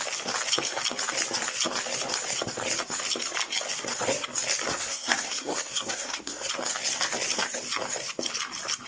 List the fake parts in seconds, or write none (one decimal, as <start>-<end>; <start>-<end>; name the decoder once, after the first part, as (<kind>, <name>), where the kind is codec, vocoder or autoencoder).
4.7-6.5 (codec, SNAC)